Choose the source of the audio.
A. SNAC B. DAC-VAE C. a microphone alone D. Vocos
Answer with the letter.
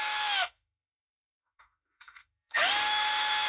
B